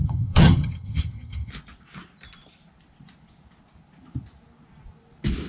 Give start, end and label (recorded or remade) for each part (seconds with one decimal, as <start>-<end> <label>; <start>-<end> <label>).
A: 0.0-1.5 remade; 1.5-5.5 recorded